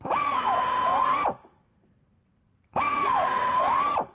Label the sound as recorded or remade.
remade